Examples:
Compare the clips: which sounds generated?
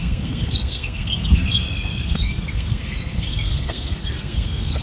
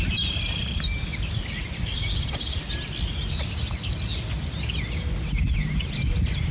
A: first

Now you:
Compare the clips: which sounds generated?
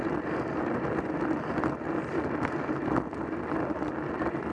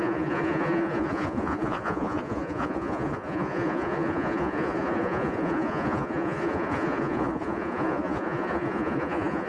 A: second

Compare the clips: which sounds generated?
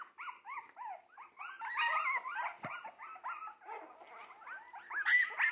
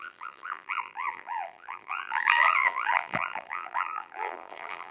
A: second